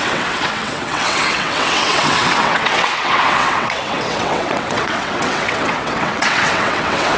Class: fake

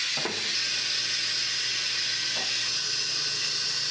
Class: real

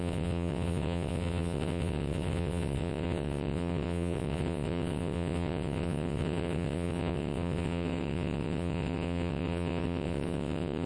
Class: fake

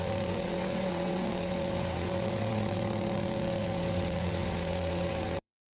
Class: fake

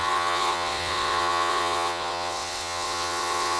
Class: fake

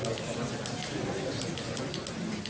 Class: real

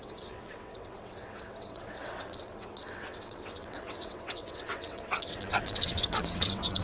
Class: fake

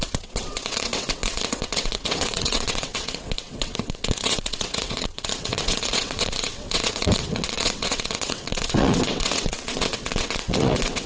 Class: fake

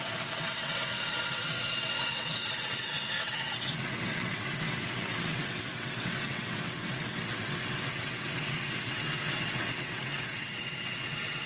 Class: fake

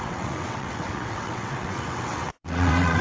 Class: fake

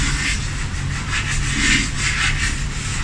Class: real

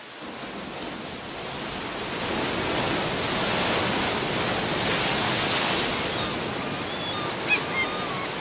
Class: real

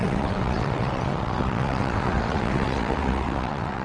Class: fake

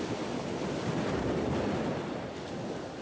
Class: real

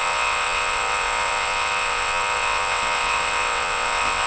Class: fake